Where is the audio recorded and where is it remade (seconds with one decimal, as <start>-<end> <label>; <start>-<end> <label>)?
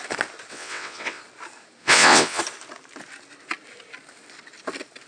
0.0-0.5 recorded; 0.5-1.2 remade; 1.2-1.8 recorded; 1.8-2.4 remade; 2.4-5.1 recorded